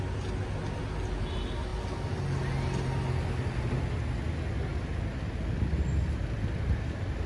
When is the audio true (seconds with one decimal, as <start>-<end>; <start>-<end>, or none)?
0.0-7.3